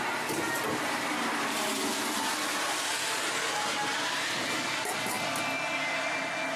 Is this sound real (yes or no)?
yes